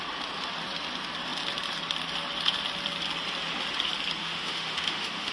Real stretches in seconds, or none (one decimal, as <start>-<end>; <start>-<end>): 0.0-4.2